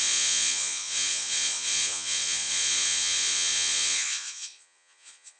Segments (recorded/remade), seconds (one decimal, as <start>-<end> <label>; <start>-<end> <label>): 0.0-5.4 remade